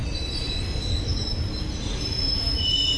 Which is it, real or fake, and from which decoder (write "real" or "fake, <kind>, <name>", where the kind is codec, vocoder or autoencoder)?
real